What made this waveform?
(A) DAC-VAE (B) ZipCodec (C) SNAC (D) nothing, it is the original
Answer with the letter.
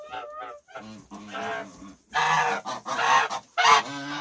D